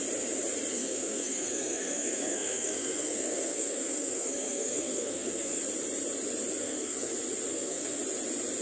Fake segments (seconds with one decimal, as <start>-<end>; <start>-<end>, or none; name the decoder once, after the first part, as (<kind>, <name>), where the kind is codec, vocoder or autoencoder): 0.7-5.6 (codec, SNAC); 6.6-7.1; 7.5-8.0